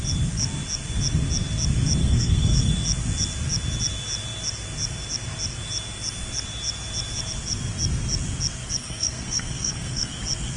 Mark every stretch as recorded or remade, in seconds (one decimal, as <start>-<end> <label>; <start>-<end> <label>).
0.0-2.0 recorded; 2.0-2.7 remade; 2.7-8.8 recorded; 8.8-10.1 remade; 10.1-10.6 recorded